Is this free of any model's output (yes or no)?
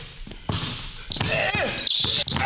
yes